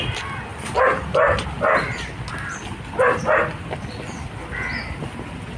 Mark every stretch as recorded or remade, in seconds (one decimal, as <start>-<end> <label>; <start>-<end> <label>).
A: 0.0-5.6 recorded